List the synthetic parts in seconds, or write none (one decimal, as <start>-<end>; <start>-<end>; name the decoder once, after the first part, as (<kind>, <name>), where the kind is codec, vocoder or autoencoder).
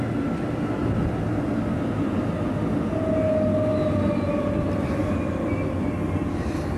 none